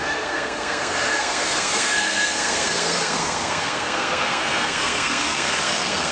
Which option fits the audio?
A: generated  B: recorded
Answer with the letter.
A